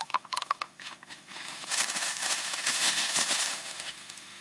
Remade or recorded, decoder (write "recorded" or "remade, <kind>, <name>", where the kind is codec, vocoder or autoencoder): remade, autoencoder, DAC-VAE